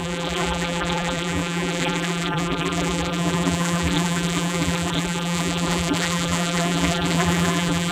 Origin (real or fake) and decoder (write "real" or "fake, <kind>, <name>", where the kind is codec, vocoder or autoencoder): fake, vocoder, BigVGAN v2